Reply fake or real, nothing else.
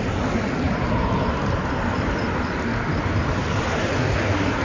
real